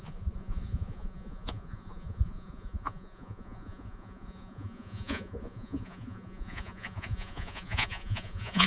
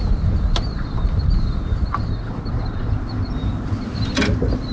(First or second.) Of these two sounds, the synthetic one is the first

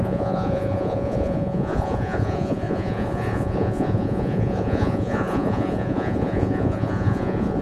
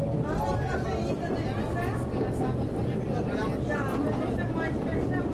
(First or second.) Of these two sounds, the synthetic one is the first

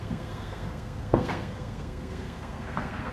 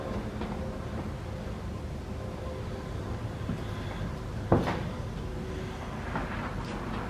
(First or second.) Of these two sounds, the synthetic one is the first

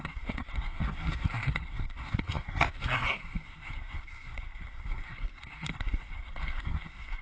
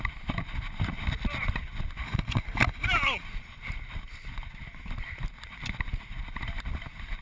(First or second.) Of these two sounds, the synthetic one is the first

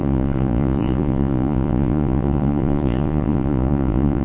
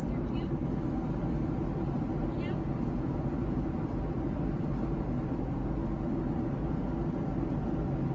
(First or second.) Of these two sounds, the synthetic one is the first